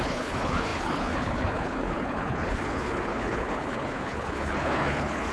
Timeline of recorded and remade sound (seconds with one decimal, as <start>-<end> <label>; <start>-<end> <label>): 0.0-5.3 remade